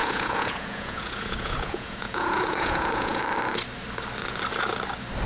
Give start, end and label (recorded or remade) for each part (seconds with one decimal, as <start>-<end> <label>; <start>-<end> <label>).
0.0-3.2 remade; 3.2-5.3 recorded